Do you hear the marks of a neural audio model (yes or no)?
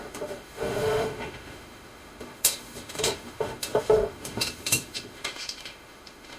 yes